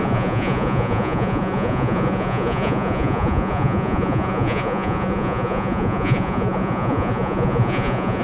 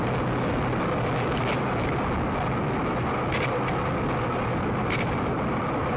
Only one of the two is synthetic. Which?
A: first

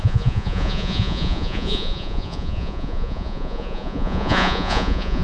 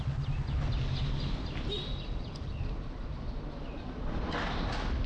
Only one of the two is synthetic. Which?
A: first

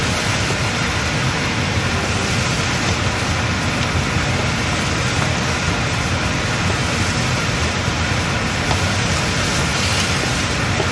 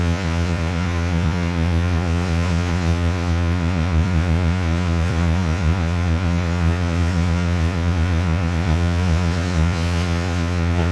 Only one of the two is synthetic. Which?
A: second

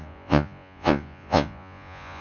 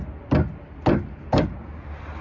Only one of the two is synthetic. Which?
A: first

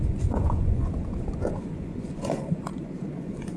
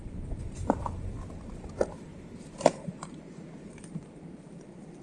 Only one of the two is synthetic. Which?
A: first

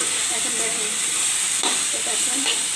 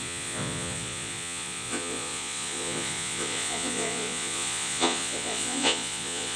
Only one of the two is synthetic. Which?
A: second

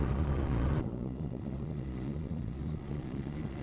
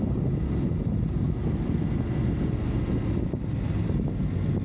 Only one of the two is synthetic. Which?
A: first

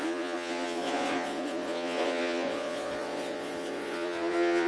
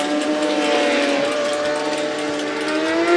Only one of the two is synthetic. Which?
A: first